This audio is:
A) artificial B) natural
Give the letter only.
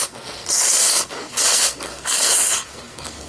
A